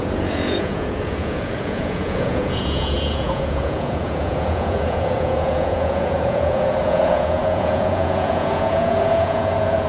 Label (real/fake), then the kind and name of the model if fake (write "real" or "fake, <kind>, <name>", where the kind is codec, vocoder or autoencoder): fake, vocoder, Vocos